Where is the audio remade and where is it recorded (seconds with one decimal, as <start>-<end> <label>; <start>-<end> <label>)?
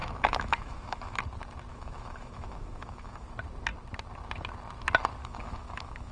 0.0-1.2 remade; 1.2-1.7 recorded; 1.7-3.3 remade; 3.3-5.2 recorded; 5.2-6.1 remade